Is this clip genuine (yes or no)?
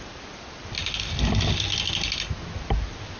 yes